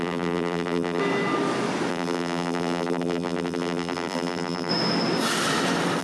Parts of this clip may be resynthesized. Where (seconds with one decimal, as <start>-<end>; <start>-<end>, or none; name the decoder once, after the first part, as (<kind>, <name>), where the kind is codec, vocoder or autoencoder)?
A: 0.0-1.0 (vocoder, BigVGAN v2); 1.9-4.7